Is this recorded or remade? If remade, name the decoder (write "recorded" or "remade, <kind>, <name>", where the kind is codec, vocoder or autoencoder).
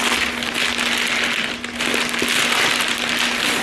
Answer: recorded